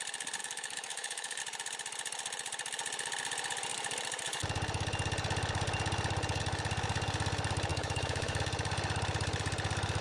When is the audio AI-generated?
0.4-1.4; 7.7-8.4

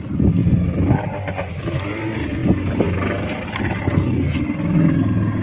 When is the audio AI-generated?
none

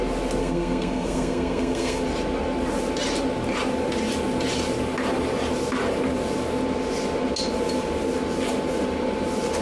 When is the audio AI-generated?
0.4-2.0

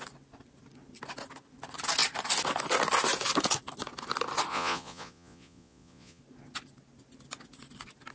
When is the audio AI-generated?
4.5-6.2

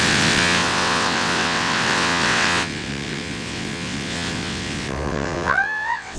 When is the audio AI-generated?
0.0-6.2

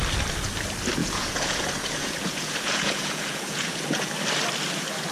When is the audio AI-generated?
1.0-4.1

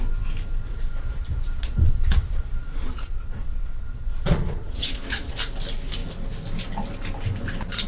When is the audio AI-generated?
0.7-5.4